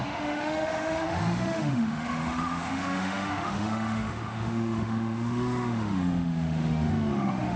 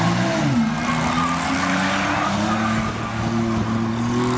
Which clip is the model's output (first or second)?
first